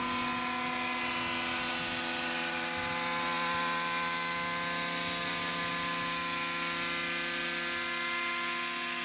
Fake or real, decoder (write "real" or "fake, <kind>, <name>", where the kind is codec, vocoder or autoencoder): real